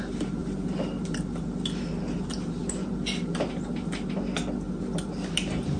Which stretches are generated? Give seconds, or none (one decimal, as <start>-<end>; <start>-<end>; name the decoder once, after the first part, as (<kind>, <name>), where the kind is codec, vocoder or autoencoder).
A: none